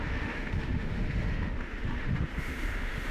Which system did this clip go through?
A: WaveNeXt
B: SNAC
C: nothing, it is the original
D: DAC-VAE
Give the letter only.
D